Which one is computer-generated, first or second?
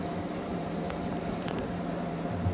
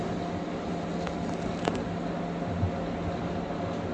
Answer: first